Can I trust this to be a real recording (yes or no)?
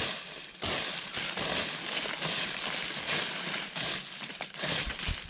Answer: yes